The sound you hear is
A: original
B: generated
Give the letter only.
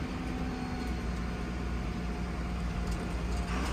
A